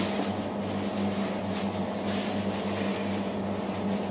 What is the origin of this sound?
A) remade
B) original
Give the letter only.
B